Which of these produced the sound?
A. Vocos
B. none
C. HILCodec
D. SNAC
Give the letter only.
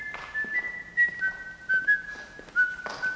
B